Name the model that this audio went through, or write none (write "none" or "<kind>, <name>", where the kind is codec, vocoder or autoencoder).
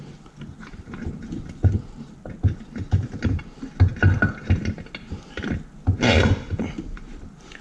none